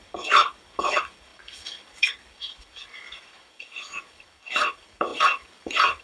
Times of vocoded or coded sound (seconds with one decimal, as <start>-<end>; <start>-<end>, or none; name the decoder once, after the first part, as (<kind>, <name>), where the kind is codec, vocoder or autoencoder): 0.0-6.0 (codec, DAC)